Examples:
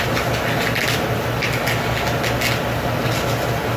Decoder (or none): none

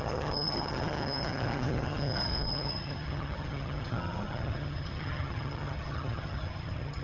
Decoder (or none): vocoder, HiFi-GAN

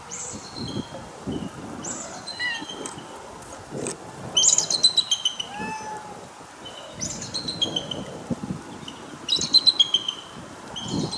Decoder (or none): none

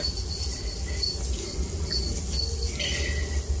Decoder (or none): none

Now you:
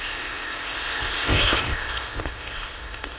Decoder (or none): codec, ZipCodec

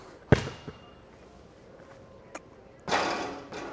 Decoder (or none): none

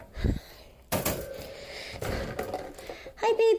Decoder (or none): none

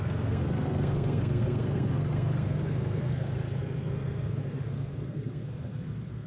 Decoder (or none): codec, SNAC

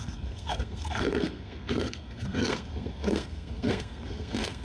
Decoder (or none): codec, SNAC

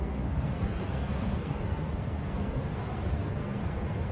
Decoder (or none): codec, SNAC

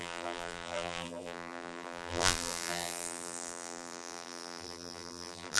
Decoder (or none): vocoder, BigVGAN v2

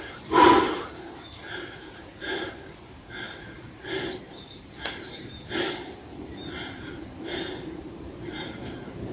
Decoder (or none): vocoder, BigVGAN v2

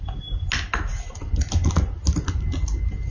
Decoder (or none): none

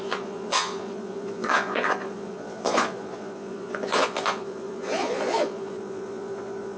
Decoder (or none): vocoder, Vocos